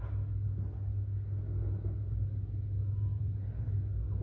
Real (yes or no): yes